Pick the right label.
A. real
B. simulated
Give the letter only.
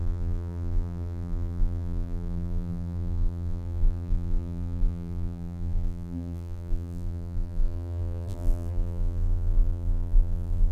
B